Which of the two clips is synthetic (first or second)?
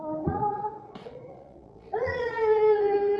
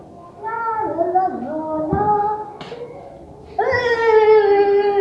first